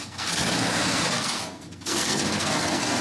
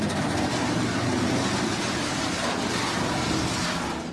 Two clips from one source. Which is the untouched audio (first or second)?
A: second